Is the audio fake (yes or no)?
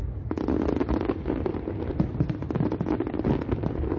no